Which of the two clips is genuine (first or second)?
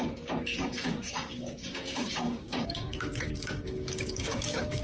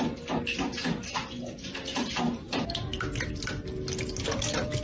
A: second